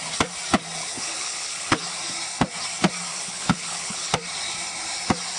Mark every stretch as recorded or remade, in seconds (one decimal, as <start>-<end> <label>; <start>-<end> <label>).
0.0-0.8 recorded; 0.8-2.0 remade; 2.0-3.1 recorded; 3.1-4.1 remade; 4.1-5.4 recorded

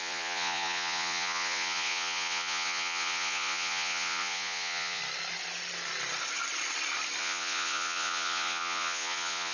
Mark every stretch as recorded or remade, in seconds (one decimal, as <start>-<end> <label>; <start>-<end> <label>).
0.0-5.0 remade; 5.0-7.2 recorded; 7.2-9.5 remade

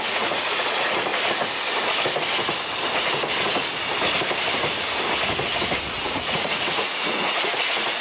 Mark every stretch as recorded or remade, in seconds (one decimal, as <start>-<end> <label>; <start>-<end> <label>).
0.0-1.1 remade; 1.1-5.8 recorded; 5.8-8.0 remade

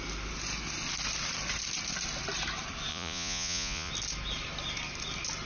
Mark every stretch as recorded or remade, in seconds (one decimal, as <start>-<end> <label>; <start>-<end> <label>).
0.0-2.9 recorded; 2.9-3.9 remade; 3.9-5.5 recorded